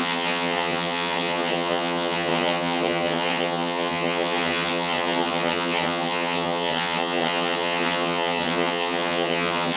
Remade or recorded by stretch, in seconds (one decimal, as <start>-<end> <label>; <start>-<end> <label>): 0.0-9.8 remade